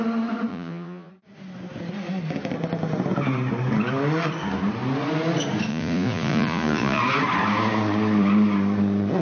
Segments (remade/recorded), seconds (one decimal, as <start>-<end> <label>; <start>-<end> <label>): 0.0-0.5 recorded; 0.5-1.1 remade; 1.1-5.7 recorded; 5.7-7.0 remade; 7.0-9.2 recorded